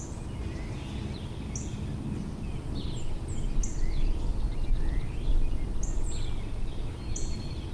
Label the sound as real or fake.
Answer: real